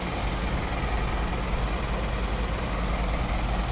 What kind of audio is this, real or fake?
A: real